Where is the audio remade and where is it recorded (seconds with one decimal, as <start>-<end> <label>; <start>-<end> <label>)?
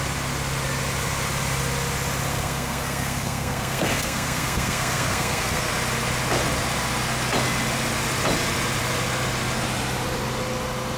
0.0-2.3 recorded; 2.3-5.7 remade; 5.7-11.0 recorded